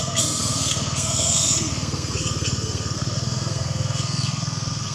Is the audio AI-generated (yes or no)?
yes